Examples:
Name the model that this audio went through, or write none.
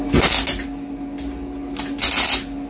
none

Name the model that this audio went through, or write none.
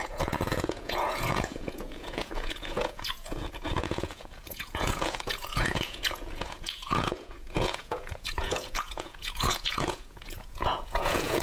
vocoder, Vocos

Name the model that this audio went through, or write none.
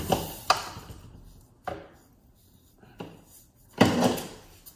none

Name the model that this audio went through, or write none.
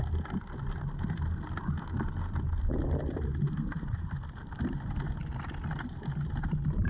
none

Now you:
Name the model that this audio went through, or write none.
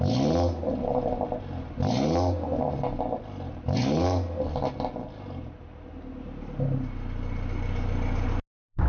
none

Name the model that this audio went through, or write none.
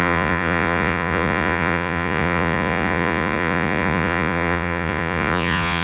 vocoder, Vocos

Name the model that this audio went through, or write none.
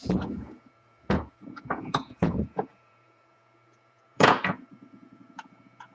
vocoder, Vocos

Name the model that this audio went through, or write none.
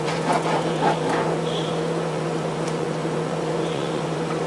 vocoder, Vocos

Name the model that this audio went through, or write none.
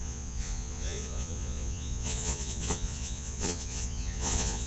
vocoder, Vocos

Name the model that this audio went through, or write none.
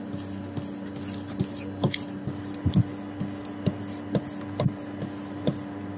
none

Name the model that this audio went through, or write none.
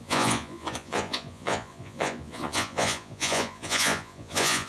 vocoder, Vocos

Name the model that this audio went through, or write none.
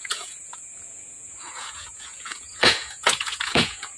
vocoder, Vocos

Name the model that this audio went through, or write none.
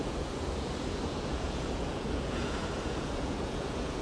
vocoder, Vocos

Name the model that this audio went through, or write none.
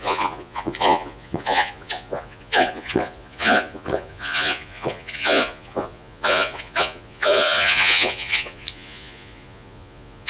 vocoder, Vocos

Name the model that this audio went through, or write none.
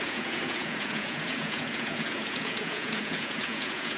vocoder, Vocos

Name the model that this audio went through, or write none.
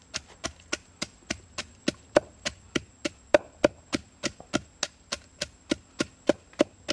none